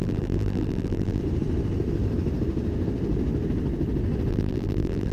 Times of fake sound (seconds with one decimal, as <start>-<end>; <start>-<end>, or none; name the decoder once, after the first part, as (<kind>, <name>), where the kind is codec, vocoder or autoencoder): 0.0-1.2 (vocoder, BigVGAN v2); 4.3-5.1